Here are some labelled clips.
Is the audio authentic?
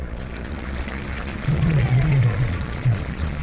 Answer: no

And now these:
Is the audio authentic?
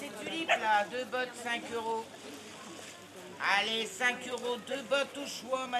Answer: yes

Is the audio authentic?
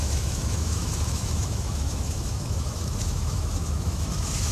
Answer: no